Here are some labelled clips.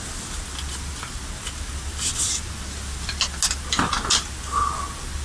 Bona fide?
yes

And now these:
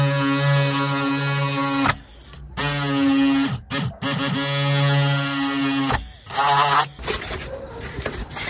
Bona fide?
yes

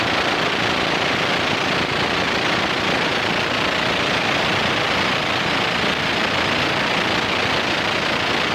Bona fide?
no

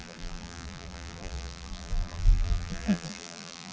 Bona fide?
no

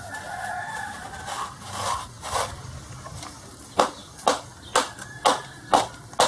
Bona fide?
yes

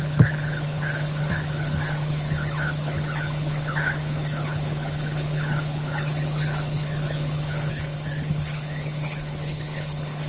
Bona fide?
no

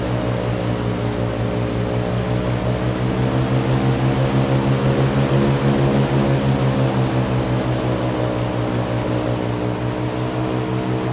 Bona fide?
yes